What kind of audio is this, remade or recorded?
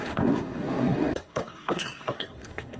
remade